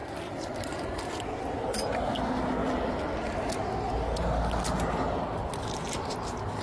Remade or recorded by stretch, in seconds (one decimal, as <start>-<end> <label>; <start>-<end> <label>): 0.0-1.4 remade; 1.4-6.6 recorded